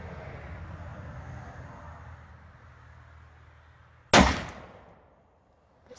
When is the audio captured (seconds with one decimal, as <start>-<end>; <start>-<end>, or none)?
0.0-6.0